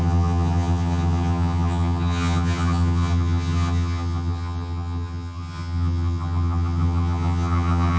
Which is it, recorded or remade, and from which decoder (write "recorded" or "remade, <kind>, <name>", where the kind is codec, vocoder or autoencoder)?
remade, vocoder, HiFi-GAN